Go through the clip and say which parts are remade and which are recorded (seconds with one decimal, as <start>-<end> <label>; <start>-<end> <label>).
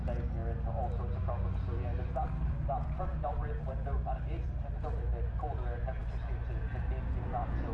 0.0-1.9 recorded; 1.9-5.1 remade; 5.1-7.7 recorded